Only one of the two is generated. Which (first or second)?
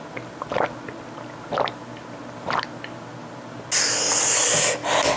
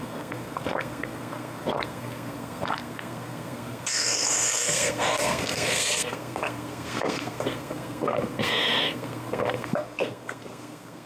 second